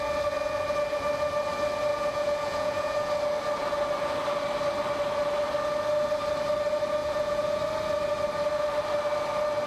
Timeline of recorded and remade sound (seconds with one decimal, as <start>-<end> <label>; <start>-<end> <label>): 0.0-1.9 recorded; 1.9-3.1 remade; 3.1-7.0 recorded; 7.0-7.6 remade; 7.6-9.7 recorded